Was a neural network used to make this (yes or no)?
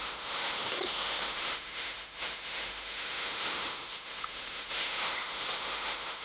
yes